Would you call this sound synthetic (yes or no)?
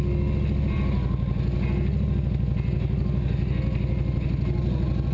no